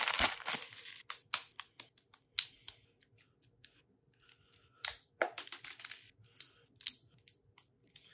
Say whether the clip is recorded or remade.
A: recorded